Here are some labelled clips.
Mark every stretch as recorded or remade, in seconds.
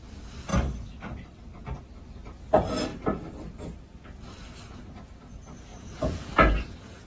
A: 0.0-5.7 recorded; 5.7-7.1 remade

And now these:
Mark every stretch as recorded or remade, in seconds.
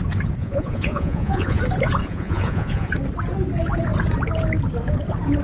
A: 0.0-0.4 recorded; 0.4-1.6 remade; 1.6-2.0 recorded; 2.0-2.9 remade; 2.9-5.4 recorded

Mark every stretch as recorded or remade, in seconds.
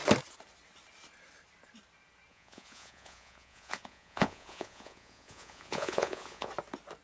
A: 0.0-2.3 recorded; 2.3-6.5 remade; 6.5-7.0 recorded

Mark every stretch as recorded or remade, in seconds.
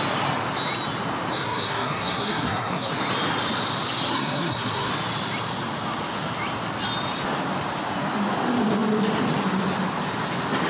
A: 0.0-1.3 recorded; 1.3-2.9 remade; 2.9-4.1 recorded; 4.1-4.9 remade; 4.9-10.7 recorded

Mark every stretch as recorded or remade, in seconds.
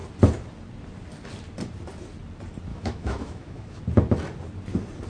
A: 0.0-2.7 recorded; 2.7-3.8 remade; 3.8-5.1 recorded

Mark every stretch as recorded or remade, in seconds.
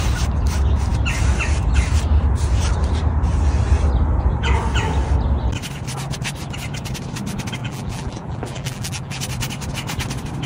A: 0.0-7.6 recorded; 7.6-9.2 remade; 9.2-10.5 recorded